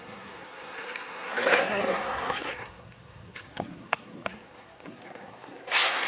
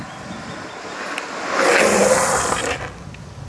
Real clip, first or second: second